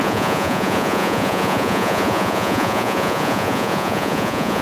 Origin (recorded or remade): remade